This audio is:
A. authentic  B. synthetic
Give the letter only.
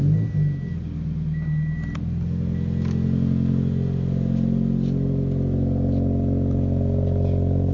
A